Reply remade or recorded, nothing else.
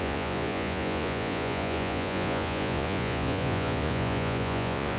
remade